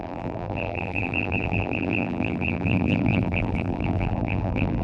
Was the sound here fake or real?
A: fake